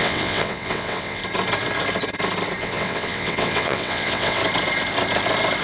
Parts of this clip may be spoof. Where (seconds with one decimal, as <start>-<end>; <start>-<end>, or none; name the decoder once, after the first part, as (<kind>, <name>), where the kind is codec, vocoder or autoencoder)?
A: 0.0-1.2 (vocoder, WaveNeXt); 2.6-4.4